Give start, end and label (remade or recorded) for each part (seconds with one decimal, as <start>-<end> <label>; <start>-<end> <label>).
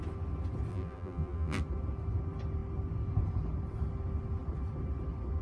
0.0-0.7 recorded; 0.7-1.6 remade; 1.6-5.4 recorded